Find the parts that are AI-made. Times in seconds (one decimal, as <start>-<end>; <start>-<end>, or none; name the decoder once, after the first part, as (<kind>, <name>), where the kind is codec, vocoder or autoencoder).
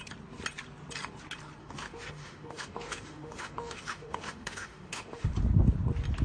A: 1.6-5.3 (autoencoder, DAC-VAE)